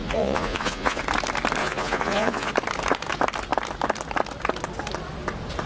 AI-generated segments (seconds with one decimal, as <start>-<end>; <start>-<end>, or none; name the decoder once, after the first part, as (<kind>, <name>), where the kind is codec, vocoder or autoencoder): 0.0-1.0 (vocoder, Vocos); 1.6-2.5